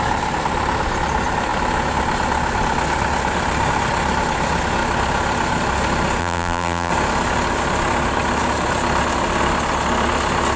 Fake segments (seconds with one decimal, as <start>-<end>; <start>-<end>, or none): 6.2-6.9